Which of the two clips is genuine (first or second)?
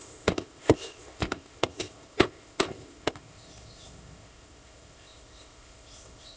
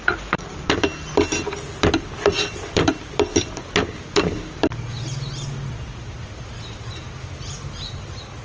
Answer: second